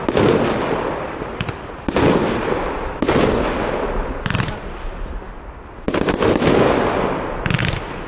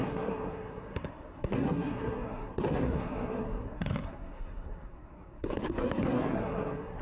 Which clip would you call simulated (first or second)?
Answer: second